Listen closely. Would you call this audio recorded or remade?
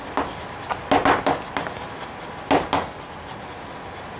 recorded